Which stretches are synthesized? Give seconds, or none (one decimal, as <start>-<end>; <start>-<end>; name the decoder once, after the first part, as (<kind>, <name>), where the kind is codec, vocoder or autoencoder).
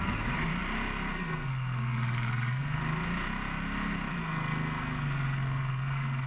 0.0-0.5 (codec, SNAC); 1.1-2.8; 4.2-6.3